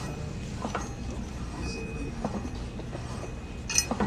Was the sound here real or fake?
real